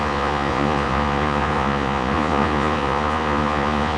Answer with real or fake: fake